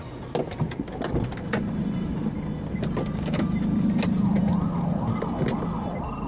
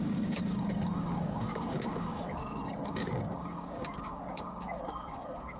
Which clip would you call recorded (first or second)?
first